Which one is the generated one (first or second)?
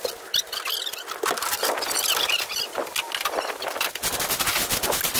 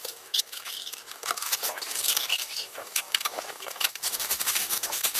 second